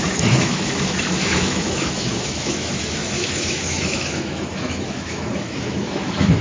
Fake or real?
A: fake